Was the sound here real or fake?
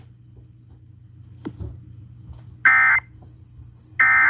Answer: real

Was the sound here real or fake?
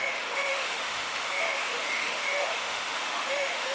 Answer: fake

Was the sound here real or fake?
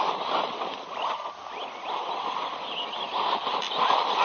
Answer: real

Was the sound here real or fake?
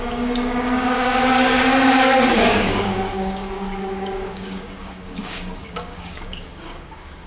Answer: fake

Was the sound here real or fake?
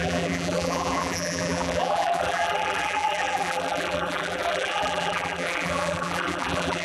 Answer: fake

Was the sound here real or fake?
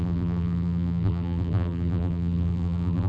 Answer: fake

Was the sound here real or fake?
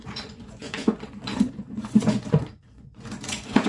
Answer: fake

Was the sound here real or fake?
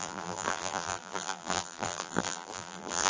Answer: fake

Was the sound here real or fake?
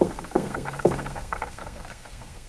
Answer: fake